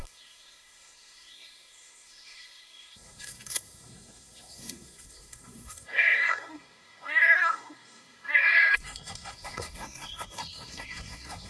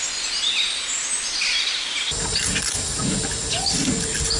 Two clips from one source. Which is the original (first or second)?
second